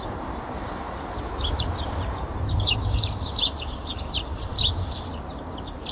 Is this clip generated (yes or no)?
yes